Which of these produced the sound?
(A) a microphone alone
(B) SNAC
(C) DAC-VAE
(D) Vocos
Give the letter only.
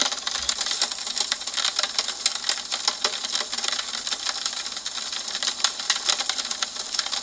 A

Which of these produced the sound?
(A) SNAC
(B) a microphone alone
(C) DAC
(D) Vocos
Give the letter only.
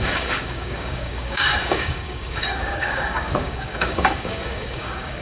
C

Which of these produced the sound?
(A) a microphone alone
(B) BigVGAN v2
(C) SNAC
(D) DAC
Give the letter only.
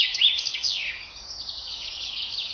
D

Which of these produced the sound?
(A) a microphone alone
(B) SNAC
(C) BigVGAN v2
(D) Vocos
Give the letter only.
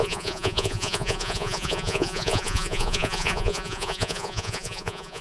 D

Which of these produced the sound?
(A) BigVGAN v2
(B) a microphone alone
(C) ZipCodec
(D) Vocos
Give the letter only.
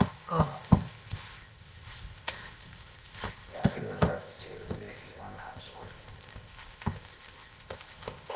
C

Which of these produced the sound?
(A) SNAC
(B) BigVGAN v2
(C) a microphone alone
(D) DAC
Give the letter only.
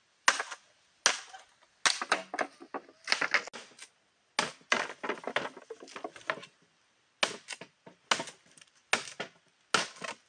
C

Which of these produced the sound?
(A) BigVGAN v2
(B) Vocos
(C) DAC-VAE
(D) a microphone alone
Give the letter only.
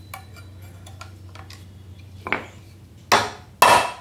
D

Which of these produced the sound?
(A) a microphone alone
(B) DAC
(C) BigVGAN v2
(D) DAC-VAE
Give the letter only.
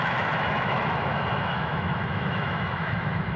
D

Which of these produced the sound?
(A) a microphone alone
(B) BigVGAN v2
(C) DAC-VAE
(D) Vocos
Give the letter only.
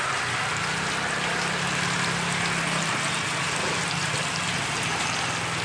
A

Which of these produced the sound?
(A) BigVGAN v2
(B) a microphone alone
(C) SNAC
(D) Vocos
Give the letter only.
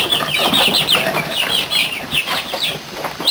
A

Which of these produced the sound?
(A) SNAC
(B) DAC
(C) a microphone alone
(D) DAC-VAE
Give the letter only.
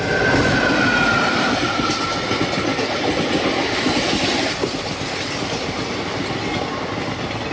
C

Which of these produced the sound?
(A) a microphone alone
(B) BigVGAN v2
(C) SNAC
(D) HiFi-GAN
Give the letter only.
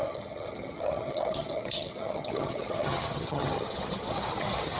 D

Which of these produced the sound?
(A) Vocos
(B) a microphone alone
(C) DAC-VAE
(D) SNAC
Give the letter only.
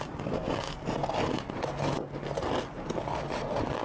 B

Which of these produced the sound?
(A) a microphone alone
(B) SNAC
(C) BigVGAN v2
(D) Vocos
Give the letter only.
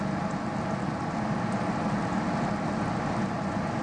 A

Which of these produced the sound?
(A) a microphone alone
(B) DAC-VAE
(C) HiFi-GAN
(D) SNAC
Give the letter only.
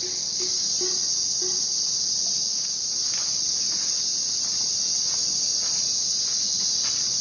A